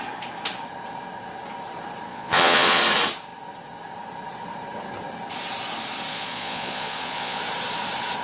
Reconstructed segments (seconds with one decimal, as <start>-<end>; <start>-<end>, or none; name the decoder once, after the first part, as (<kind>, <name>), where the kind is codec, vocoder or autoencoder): 2.1-2.8 (vocoder, Vocos); 6.1-7.4